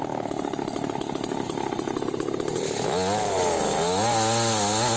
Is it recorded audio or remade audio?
recorded